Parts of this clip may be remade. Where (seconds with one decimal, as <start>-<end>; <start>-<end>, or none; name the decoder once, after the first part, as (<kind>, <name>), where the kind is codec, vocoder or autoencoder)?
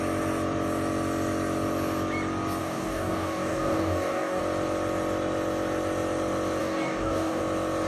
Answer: 2.6-4.4 (codec, DAC); 6.6-7.4